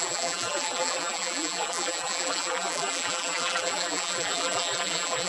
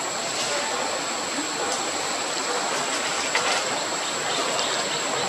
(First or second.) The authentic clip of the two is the second